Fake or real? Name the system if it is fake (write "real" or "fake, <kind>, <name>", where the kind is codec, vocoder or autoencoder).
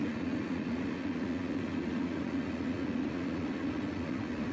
fake, vocoder, Vocos